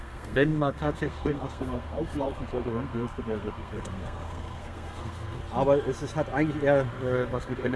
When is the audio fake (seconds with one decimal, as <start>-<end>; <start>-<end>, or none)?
0.0-5.4; 6.9-7.8